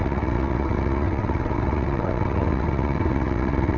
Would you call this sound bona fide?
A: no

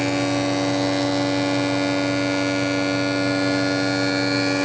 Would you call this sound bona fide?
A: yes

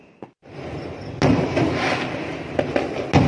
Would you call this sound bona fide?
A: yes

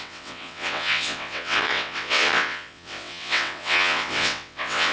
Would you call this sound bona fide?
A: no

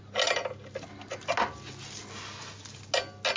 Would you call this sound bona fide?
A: yes